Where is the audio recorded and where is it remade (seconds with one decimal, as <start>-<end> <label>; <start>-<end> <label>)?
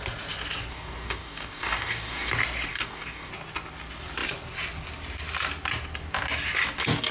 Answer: 0.0-0.7 recorded; 0.7-2.3 remade; 2.3-2.7 recorded; 2.7-3.3 remade; 3.3-7.1 recorded